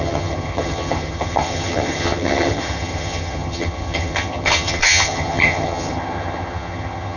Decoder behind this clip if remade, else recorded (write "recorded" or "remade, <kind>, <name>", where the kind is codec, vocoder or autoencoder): remade, vocoder, HiFi-GAN